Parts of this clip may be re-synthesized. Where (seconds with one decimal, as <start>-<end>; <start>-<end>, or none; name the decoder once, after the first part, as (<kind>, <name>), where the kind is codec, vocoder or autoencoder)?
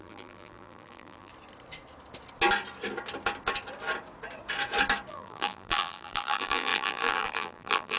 0.0-1.3 (vocoder, BigVGAN v2); 5.1-8.0